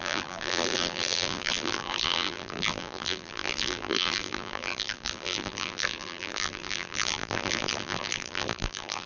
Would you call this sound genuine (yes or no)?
no